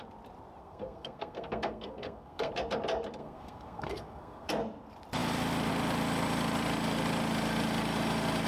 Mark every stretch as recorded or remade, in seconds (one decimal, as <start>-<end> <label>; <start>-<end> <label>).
0.0-0.6 recorded; 0.6-2.5 remade; 2.5-3.2 recorded; 3.2-4.5 remade; 4.5-8.5 recorded